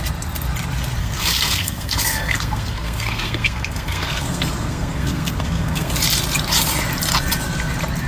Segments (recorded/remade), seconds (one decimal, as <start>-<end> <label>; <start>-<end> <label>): 0.0-1.0 recorded; 1.0-5.9 remade; 5.9-8.1 recorded